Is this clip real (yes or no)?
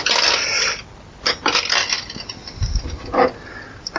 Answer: yes